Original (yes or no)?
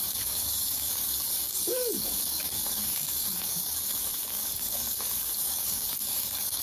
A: no